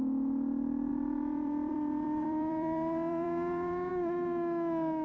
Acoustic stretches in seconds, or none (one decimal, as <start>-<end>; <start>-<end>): 0.0-0.9; 3.9-5.0